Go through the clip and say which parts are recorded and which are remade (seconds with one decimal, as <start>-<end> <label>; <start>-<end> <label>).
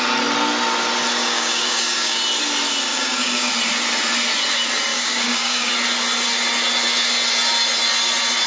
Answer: 0.0-1.2 recorded; 1.2-2.2 remade; 2.2-2.9 recorded; 2.9-3.5 remade; 3.5-4.9 recorded; 4.9-5.7 remade; 5.7-8.5 recorded